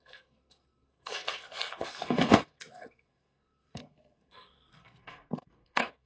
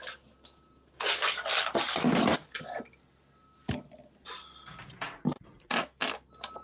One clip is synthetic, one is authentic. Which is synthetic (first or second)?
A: first